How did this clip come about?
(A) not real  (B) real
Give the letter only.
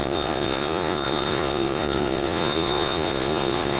A